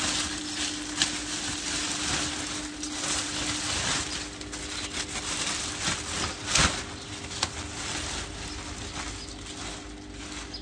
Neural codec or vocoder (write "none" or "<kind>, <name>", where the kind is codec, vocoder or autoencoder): none